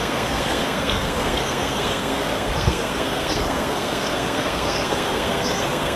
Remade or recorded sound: remade